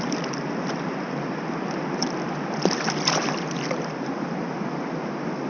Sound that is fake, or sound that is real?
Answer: real